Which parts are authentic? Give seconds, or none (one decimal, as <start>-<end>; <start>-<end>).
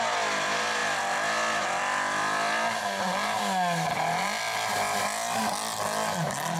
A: 0.0-6.6